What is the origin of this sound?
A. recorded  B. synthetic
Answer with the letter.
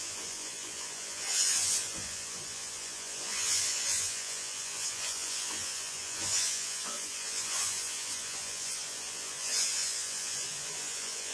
B